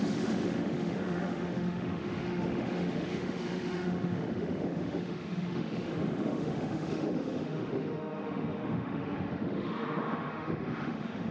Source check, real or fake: fake